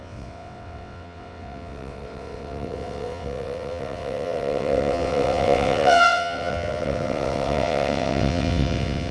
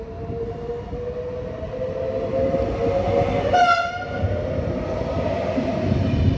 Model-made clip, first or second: first